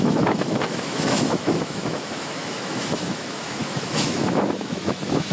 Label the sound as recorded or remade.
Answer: remade